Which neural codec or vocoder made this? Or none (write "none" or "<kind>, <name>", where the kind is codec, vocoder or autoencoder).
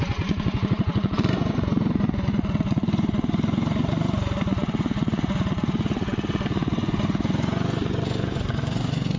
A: vocoder, Vocos